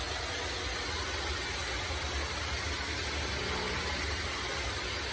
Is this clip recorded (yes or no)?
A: yes